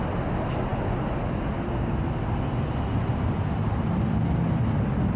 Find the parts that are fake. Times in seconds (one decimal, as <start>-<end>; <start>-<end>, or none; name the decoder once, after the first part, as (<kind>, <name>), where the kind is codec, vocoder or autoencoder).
none

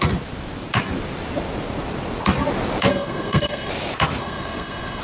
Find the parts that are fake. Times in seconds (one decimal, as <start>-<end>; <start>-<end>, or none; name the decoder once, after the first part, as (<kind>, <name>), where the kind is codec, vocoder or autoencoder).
2.9-3.7 (codec, SNAC); 4.2-5.0